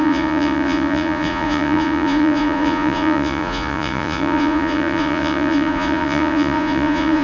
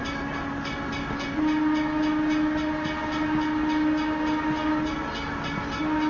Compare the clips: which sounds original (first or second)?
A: second